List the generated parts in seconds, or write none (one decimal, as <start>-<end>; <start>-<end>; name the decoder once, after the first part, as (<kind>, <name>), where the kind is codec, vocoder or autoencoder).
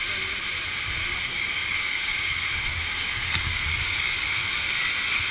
1.3-4.5 (codec, DAC)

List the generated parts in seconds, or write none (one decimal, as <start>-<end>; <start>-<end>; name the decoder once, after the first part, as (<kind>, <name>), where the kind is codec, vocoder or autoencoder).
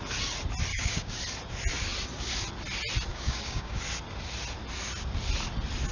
0.7-1.2 (codec, DAC); 3.1-3.8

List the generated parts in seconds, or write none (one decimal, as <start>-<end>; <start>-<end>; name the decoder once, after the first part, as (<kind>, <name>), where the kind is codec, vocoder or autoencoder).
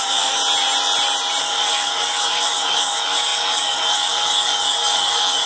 0.0-0.4 (codec, DAC); 1.4-5.5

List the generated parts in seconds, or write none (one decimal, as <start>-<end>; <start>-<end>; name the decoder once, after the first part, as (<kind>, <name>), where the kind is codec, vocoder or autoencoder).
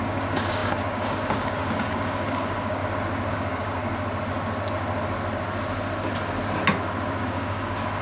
0.0-2.8 (codec, DAC); 3.3-3.8; 7.2-8.0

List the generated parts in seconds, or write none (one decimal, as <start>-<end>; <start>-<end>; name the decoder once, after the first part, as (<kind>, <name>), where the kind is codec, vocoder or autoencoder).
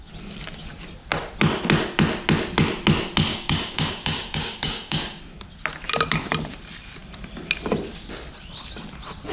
3.3-5.2 (codec, DAC)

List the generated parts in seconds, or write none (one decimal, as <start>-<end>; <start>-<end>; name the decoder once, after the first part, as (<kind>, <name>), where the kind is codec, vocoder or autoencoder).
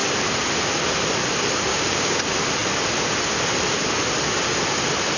1.7-2.2 (codec, DAC)